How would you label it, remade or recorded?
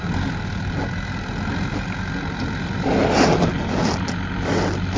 recorded